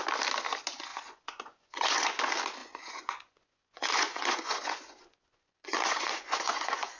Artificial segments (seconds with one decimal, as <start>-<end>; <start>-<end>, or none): 0.9-2.2; 2.6-7.0